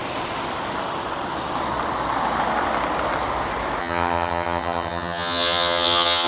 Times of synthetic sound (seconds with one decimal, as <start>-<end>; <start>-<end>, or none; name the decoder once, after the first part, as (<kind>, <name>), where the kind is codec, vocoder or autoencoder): 3.8-6.3 (vocoder, HiFi-GAN)